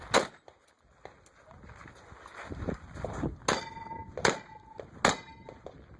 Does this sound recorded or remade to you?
recorded